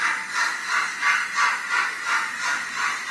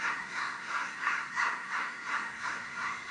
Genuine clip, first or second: first